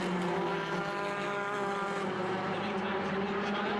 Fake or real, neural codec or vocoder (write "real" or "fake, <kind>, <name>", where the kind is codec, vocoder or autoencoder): real